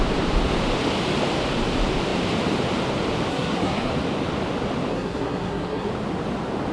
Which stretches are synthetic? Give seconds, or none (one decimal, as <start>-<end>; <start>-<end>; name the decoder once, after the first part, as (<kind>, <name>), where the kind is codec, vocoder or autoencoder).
3.3-3.9 (codec, SNAC); 4.9-5.9